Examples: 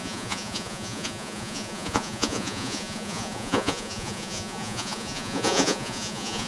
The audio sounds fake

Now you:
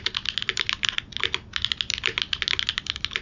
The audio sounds real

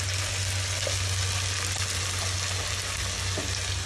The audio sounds real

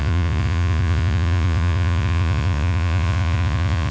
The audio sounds fake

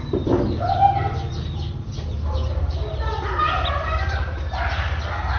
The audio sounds real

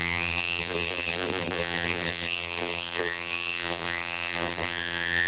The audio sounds fake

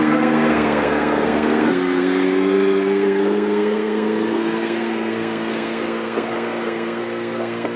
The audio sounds fake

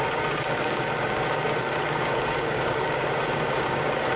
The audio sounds fake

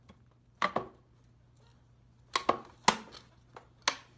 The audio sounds real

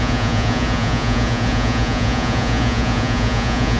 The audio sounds fake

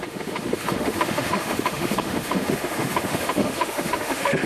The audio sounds fake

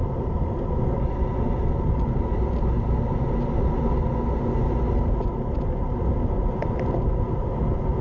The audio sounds real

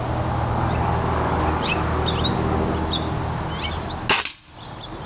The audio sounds real